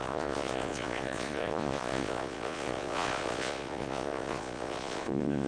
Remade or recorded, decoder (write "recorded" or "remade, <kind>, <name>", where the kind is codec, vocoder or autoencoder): remade, vocoder, Vocos